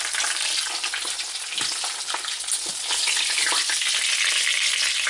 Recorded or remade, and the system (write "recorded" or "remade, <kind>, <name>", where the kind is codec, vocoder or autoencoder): recorded